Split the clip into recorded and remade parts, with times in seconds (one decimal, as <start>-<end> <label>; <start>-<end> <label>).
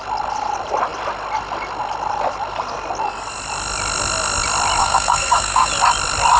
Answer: 0.0-4.8 recorded; 4.8-5.7 remade; 5.7-6.4 recorded